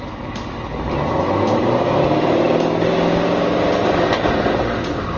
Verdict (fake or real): real